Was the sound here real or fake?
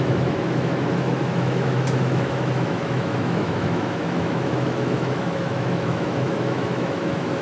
fake